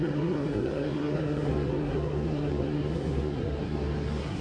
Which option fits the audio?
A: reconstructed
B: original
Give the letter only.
A